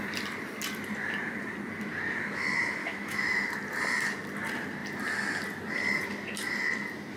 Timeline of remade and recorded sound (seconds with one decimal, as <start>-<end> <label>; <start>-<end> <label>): 0.0-2.8 recorded; 2.8-3.5 remade; 3.5-7.2 recorded